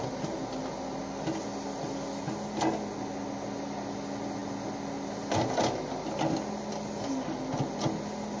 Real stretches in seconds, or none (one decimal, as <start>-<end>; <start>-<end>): 0.0-8.4